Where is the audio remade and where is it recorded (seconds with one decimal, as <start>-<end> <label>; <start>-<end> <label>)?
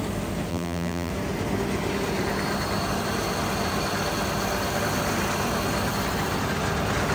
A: 0.0-0.5 recorded; 0.5-1.1 remade; 1.1-7.1 recorded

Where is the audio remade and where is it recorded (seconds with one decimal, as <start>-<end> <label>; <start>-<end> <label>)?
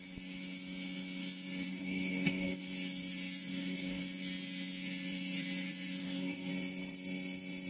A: 0.0-1.7 recorded; 1.7-2.6 remade; 2.6-3.5 recorded; 3.5-4.0 remade; 4.0-6.0 recorded; 6.0-6.5 remade; 6.5-7.7 recorded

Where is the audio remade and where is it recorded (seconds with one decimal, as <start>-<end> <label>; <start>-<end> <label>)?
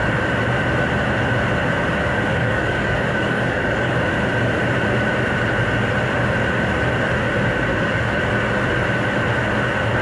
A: 0.0-2.3 recorded; 2.3-3.9 remade; 3.9-7.7 recorded; 7.7-8.2 remade; 8.2-10.0 recorded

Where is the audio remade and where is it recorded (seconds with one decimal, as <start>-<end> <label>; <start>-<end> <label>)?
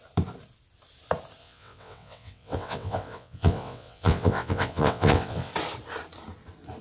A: 0.0-1.4 recorded; 1.4-5.5 remade; 5.5-6.8 recorded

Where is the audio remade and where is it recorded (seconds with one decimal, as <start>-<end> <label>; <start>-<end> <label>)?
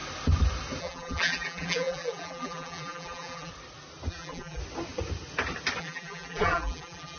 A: 0.0-0.8 recorded; 0.8-3.5 remade; 3.5-4.1 recorded; 4.1-4.6 remade; 4.6-5.8 recorded; 5.8-7.2 remade